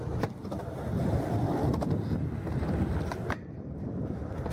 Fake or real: real